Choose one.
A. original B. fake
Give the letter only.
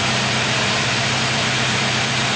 B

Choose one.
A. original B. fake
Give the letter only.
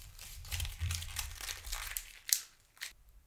B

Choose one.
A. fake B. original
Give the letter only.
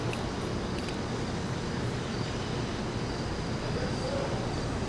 B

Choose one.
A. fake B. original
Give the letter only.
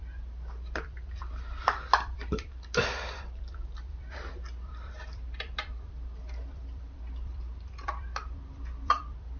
A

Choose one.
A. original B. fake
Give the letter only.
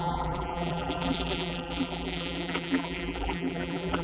B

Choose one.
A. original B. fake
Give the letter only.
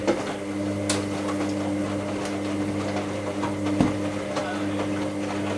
A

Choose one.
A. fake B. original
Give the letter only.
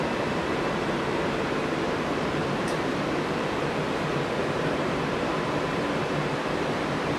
A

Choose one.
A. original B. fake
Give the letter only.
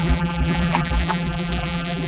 B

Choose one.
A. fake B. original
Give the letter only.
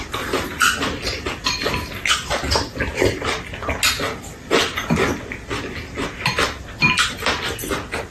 B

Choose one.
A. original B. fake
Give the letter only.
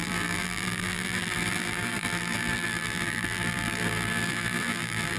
B